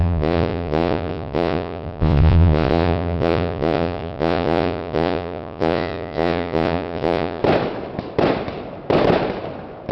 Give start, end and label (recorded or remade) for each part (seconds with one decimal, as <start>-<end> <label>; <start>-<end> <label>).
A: 0.0-7.4 remade; 7.4-9.9 recorded